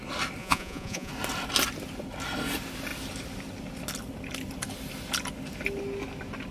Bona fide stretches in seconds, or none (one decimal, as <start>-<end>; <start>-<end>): 0.0-0.4; 1.1-6.5